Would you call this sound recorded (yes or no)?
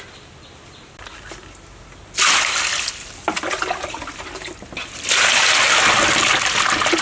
yes